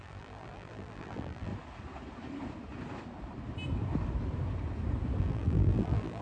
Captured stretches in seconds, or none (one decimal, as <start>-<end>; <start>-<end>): 1.5-5.2